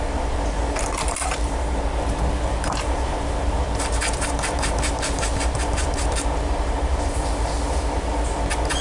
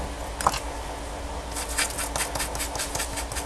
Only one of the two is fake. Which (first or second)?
first